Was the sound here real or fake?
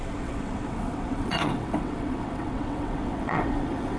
fake